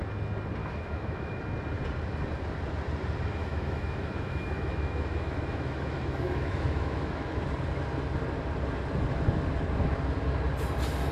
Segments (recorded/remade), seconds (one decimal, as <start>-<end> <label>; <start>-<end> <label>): 0.0-0.6 recorded; 0.6-1.4 remade; 1.4-3.4 recorded; 3.4-7.4 remade; 7.4-11.1 recorded